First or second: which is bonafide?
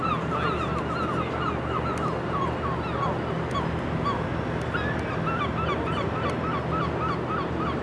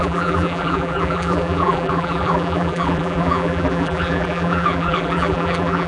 first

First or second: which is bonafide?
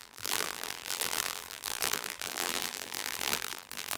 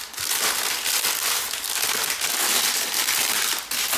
second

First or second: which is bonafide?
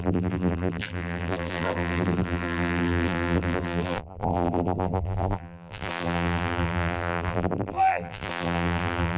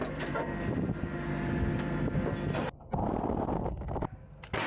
second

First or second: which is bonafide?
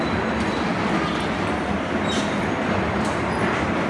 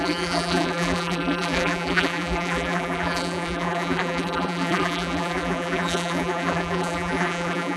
first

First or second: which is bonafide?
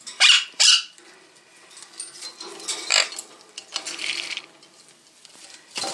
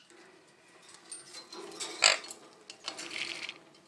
second